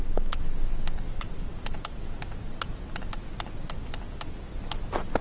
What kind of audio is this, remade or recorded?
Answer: recorded